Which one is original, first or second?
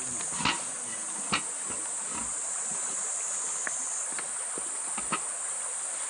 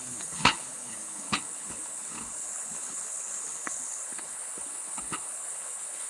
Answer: first